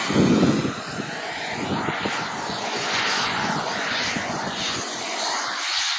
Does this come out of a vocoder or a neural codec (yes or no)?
yes